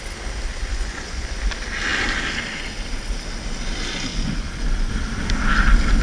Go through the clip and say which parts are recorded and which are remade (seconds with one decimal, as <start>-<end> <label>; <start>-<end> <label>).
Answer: 0.0-0.7 recorded; 0.7-1.4 remade; 1.4-4.1 recorded; 4.1-4.9 remade; 4.9-6.0 recorded